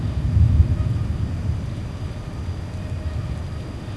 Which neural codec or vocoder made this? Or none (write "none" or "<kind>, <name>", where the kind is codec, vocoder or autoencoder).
none